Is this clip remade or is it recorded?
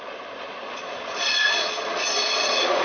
remade